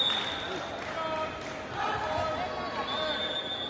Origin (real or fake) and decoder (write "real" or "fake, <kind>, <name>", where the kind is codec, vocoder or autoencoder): real